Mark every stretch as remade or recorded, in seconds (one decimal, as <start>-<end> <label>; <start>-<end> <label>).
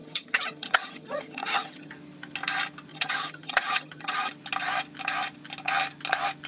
0.0-1.9 remade; 1.9-2.9 recorded; 2.9-4.3 remade; 4.3-6.5 recorded